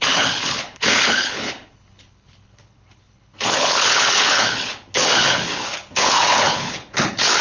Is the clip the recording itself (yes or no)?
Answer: no